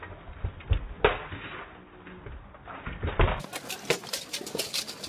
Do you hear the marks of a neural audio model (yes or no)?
no